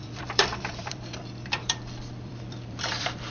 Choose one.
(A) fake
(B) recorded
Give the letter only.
A